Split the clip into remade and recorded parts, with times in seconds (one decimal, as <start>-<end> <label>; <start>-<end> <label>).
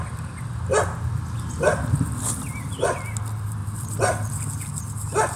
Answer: 0.0-3.6 recorded; 3.6-4.4 remade; 4.4-5.4 recorded